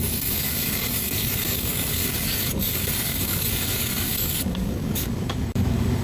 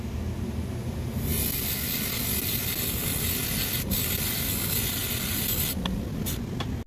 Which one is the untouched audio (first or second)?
second